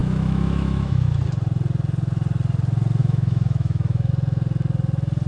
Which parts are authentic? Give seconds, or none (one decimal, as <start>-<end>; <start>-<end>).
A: 1.2-3.0; 4.1-5.3